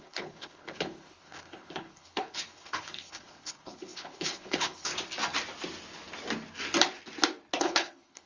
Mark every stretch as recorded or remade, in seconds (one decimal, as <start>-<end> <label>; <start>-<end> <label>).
0.0-4.9 remade; 4.9-7.6 recorded; 7.6-8.3 remade